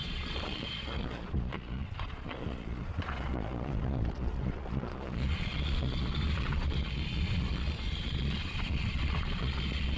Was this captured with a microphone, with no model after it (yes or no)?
no